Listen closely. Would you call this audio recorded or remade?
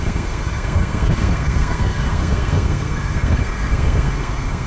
remade